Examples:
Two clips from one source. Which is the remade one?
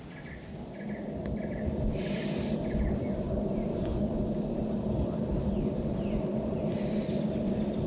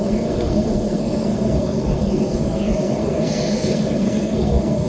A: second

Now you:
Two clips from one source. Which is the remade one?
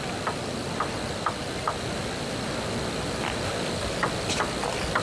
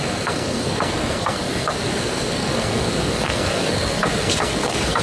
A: second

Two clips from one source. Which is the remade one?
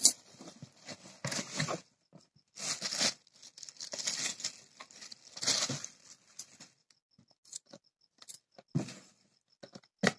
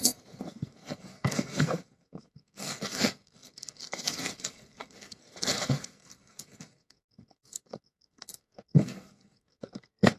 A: second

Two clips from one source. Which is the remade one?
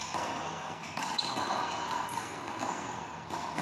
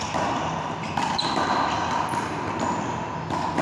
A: first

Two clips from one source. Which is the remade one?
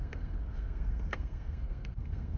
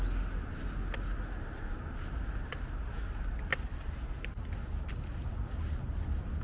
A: first